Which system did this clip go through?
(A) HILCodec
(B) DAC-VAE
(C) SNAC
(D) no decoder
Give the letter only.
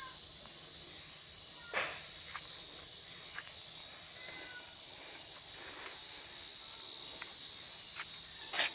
D